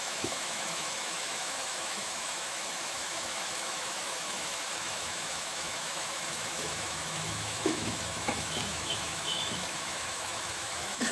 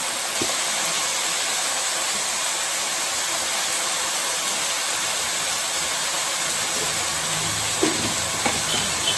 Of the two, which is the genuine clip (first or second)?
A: second